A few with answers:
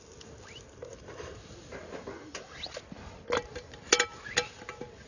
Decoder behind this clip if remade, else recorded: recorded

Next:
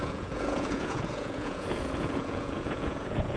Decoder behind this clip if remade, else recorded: remade, vocoder, Vocos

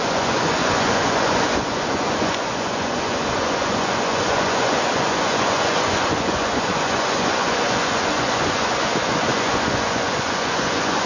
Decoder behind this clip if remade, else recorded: remade, vocoder, Vocos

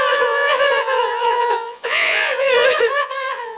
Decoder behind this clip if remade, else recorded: remade, vocoder, Vocos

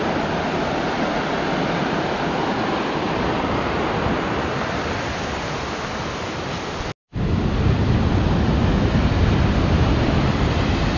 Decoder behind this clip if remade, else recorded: recorded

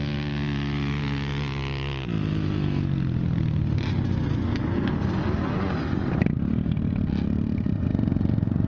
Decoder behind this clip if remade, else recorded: recorded